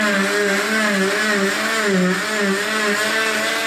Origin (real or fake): real